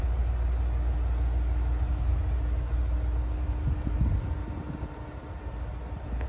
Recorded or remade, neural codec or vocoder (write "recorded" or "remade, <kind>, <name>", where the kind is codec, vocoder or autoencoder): recorded